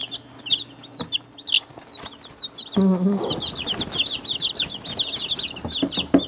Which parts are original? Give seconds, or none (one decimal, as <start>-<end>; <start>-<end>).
0.0-6.3